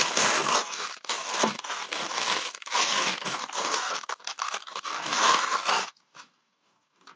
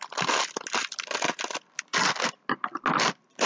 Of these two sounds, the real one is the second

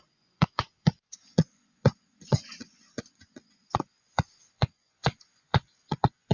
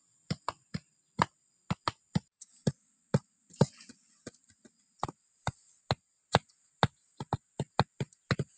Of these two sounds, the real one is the second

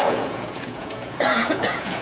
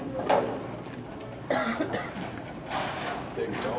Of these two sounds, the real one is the second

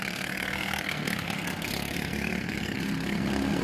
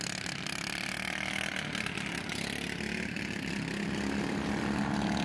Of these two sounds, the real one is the second